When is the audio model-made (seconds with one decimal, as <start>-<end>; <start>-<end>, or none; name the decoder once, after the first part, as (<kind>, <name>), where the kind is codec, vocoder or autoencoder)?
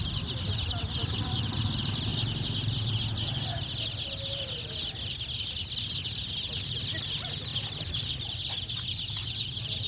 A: 0.0-2.1 (vocoder, BigVGAN v2); 7.0-7.5; 8.2-9.9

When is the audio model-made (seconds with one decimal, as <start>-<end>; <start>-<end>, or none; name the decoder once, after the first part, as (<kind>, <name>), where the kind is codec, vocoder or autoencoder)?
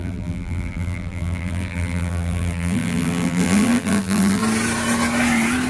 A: 0.0-4.4 (vocoder, BigVGAN v2)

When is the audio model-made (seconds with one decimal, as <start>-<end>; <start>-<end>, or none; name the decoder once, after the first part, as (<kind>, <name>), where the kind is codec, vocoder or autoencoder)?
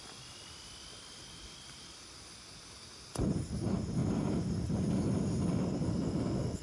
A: none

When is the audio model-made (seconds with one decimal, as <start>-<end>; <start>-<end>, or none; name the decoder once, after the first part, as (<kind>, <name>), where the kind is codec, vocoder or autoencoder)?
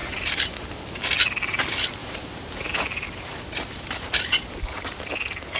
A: 0.0-0.8 (vocoder, BigVGAN v2); 2.0-5.6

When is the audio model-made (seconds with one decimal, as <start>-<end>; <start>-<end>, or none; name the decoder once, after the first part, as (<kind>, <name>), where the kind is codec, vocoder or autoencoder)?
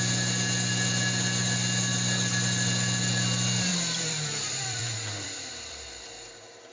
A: 3.7-5.8 (vocoder, BigVGAN v2)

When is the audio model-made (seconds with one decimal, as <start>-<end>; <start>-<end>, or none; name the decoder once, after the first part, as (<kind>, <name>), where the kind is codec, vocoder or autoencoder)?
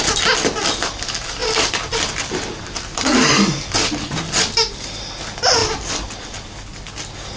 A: 1.4-5.0 (vocoder, BigVGAN v2); 5.6-6.4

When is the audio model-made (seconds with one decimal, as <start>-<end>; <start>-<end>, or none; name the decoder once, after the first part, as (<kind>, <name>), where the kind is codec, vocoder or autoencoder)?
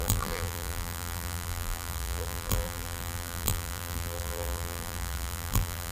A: 0.0-5.9 (vocoder, BigVGAN v2)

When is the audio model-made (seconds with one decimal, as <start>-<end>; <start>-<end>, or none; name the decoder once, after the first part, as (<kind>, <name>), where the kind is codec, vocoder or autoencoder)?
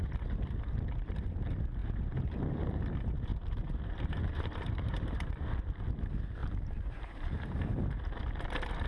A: 1.8-2.4 (vocoder, BigVGAN v2); 3.3-5.3; 6.4-8.2